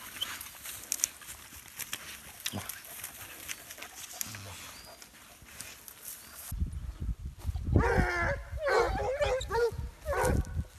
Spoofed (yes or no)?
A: no